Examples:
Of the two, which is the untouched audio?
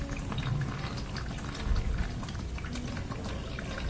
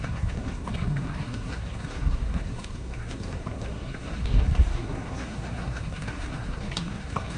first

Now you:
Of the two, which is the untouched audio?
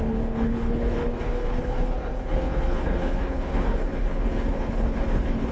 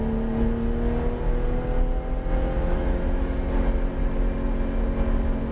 second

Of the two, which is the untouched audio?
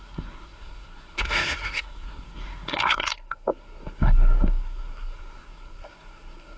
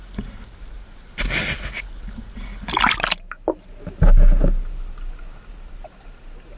second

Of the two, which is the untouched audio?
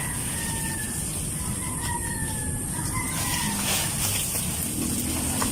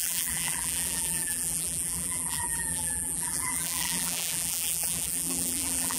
first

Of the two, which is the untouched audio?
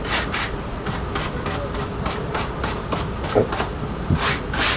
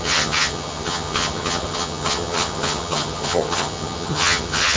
first